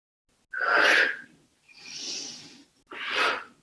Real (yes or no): yes